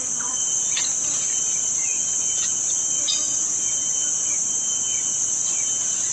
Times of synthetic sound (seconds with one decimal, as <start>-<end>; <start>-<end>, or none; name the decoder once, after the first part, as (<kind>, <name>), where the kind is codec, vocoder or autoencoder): none